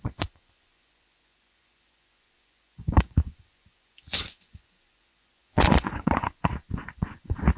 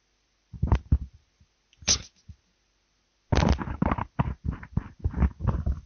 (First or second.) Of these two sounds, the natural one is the second